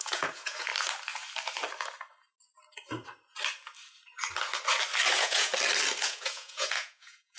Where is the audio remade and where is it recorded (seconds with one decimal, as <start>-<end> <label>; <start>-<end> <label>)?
0.0-0.7 remade; 0.7-5.1 recorded; 5.1-5.5 remade; 5.5-6.0 recorded; 6.0-7.4 remade